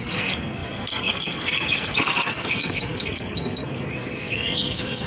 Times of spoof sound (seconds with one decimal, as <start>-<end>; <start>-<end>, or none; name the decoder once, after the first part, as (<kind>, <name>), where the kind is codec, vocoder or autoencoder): 0.0-5.1 (codec, SNAC)